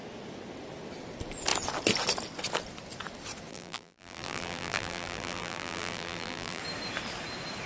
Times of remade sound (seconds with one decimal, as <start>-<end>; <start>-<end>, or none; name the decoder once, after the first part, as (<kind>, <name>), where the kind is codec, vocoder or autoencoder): 3.5-6.6 (vocoder, BigVGAN v2)